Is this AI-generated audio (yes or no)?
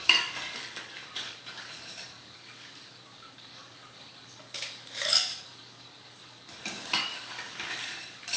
yes